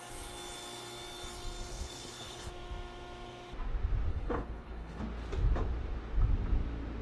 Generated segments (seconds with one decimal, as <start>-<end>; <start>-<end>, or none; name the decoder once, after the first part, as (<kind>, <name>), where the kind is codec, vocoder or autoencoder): 1.7-2.5 (codec, HILCodec); 4.1-5.0